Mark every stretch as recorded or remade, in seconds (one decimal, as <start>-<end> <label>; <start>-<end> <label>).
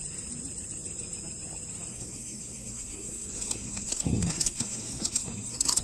0.0-1.9 recorded; 1.9-5.8 remade